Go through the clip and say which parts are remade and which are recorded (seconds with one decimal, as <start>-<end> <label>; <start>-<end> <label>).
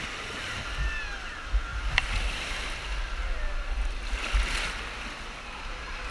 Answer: 0.0-6.1 recorded